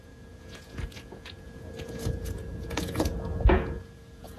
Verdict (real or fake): fake